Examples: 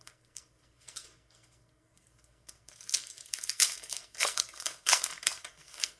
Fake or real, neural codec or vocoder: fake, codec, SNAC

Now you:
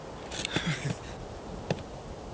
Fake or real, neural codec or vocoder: real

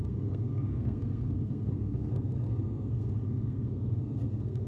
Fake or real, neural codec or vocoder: fake, codec, SNAC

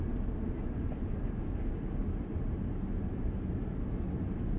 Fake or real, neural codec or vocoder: real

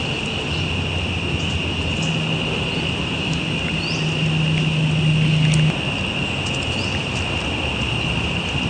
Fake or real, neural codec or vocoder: real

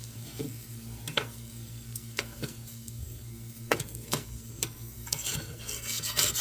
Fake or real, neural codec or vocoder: fake, codec, SNAC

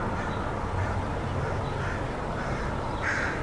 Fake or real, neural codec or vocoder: real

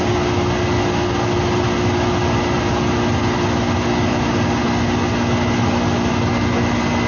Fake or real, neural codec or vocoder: real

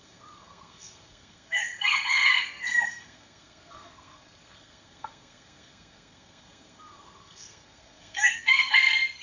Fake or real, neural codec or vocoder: fake, codec, SNAC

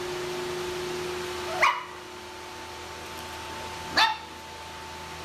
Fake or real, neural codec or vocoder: real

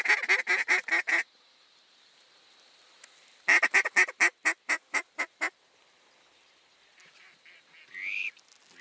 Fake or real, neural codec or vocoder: real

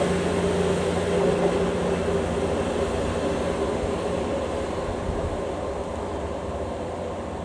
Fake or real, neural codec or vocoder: real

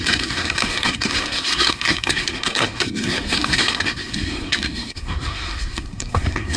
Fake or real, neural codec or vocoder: fake, codec, SNAC